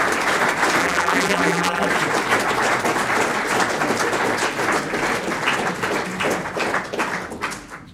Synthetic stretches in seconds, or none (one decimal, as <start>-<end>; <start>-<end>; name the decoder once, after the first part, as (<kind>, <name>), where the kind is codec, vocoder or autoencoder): 0.8-1.9 (vocoder, BigVGAN v2)

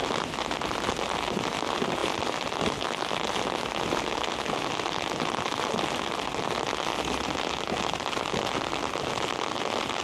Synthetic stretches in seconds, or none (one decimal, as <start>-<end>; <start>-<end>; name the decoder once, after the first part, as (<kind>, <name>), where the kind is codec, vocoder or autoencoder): none

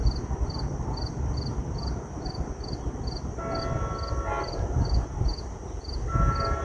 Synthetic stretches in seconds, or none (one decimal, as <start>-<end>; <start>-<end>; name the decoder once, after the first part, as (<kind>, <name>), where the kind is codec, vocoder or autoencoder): none